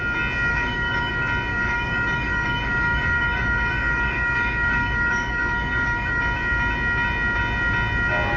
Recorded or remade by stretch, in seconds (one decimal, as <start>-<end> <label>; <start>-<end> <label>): 0.0-0.5 recorded; 0.5-1.1 remade; 1.1-1.5 recorded; 1.5-6.2 remade; 6.2-8.4 recorded